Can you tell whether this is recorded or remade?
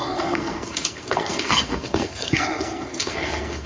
remade